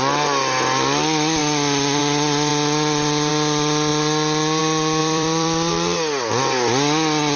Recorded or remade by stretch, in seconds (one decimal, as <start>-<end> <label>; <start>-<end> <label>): 0.0-5.0 recorded; 5.0-5.7 remade; 5.7-7.4 recorded